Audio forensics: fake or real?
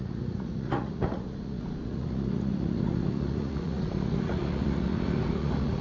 fake